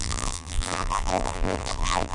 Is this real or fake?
fake